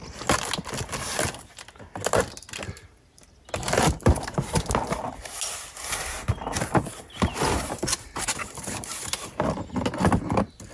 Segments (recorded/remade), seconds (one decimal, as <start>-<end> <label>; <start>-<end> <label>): 0.0-10.7 recorded